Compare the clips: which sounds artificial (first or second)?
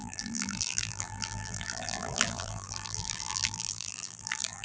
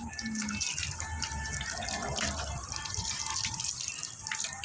first